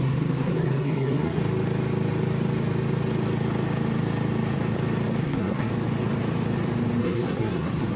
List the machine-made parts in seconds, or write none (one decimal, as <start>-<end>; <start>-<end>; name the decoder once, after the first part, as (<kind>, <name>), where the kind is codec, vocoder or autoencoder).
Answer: 0.0-1.4 (codec, SNAC); 5.2-5.7; 7.0-8.0